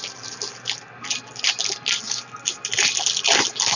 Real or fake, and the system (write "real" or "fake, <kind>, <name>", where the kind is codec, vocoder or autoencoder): real